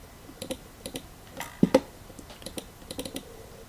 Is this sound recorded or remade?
recorded